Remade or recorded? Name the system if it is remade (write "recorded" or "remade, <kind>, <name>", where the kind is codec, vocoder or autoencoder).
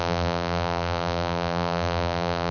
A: remade, vocoder, BigVGAN v2